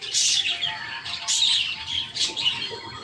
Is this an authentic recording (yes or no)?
no